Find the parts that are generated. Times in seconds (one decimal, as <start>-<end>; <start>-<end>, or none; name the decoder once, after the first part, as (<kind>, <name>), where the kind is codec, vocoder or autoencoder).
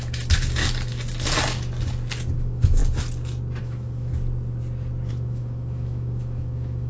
0.0-0.6 (autoencoder, DAC-VAE); 2.3-2.8; 3.6-4.1; 5.1-6.9